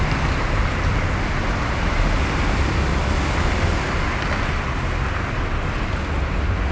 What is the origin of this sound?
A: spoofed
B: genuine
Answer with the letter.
B